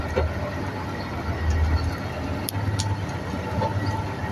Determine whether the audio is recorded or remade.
recorded